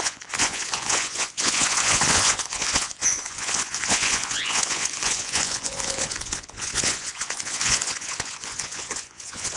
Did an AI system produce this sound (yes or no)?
yes